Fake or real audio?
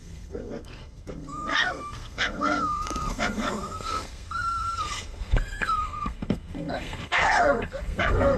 fake